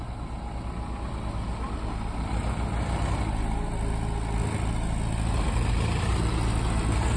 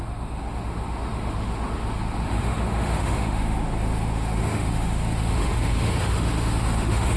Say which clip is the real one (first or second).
first